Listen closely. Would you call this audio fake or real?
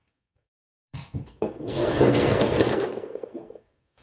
fake